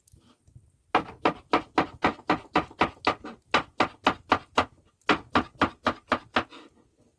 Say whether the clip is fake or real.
real